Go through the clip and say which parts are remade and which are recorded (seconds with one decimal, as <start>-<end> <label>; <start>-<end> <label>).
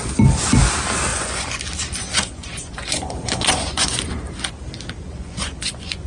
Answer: 0.0-1.1 recorded; 1.1-1.6 remade; 1.6-2.1 recorded; 2.1-4.1 remade; 4.1-5.1 recorded; 5.1-6.1 remade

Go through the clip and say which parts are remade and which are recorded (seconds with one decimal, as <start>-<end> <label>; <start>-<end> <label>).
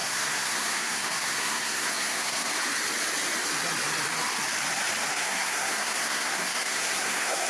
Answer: 0.0-2.5 remade; 2.5-5.1 recorded; 5.1-7.5 remade